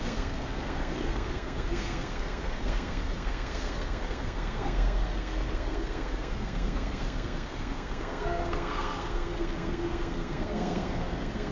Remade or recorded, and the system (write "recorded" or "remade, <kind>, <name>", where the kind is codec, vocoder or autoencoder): remade, codec, SNAC